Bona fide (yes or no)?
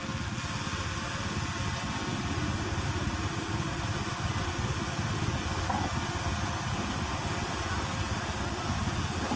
yes